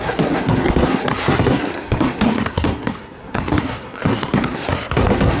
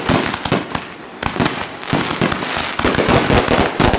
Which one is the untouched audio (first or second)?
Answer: second